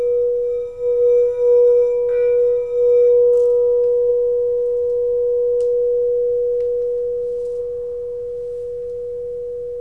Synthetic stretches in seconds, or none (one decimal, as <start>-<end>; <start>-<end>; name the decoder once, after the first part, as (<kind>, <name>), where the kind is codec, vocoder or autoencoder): none